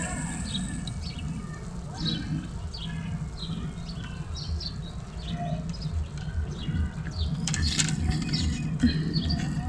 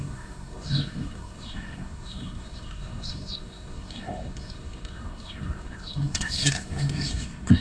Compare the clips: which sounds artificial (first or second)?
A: second